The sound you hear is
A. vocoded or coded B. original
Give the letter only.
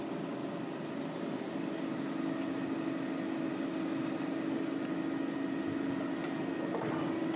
B